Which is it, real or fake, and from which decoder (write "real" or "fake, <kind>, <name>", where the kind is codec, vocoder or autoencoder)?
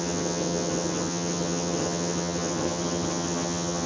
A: fake, vocoder, HiFi-GAN